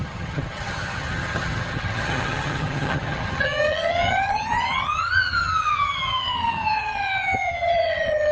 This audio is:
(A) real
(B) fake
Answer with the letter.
B